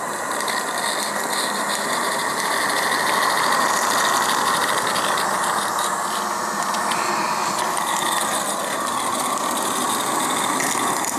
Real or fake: real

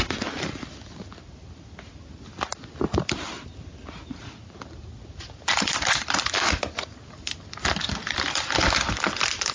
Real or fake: real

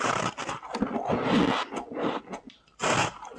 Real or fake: real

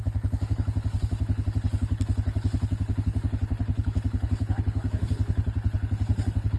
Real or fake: fake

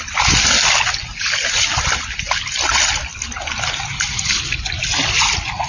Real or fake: real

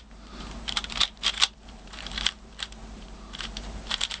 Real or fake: fake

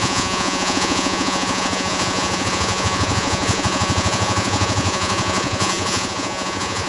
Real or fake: fake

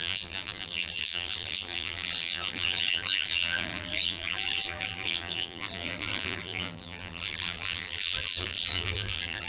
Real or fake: fake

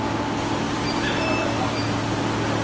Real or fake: real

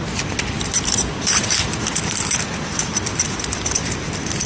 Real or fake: fake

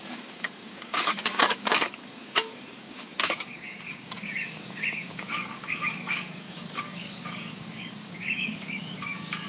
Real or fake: fake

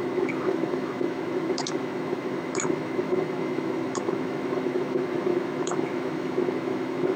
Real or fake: fake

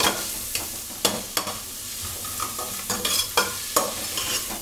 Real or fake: fake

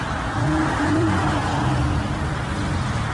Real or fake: fake